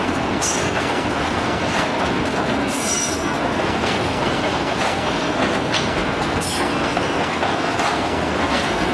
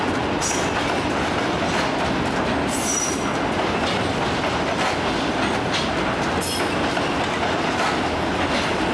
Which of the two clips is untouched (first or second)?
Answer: second